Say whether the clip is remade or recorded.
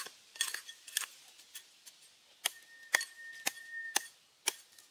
recorded